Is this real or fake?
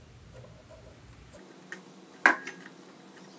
real